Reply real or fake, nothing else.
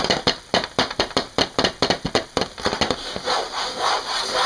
real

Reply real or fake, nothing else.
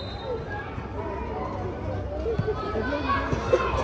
real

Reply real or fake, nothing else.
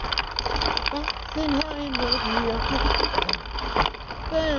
real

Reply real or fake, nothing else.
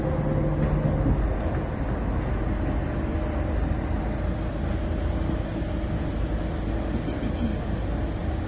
real